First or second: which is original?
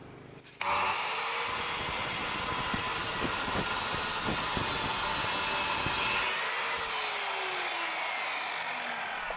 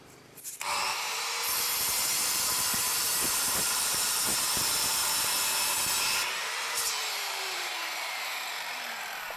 first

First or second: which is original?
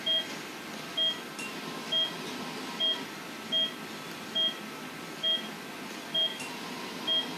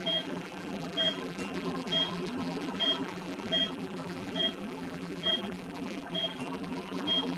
first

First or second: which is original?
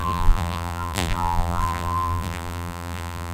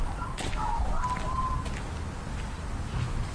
second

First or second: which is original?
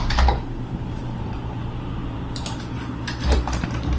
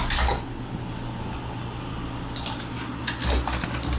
second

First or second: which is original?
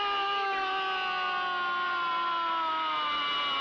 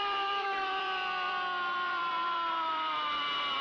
first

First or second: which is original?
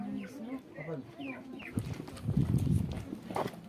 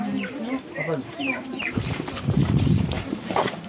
first